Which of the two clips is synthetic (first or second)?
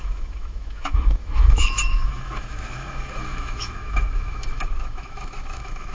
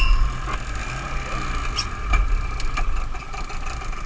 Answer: first